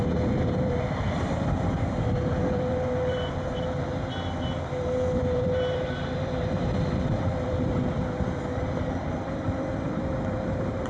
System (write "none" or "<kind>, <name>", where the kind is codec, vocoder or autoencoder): vocoder, BigVGAN v2